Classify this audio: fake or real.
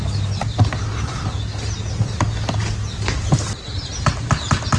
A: real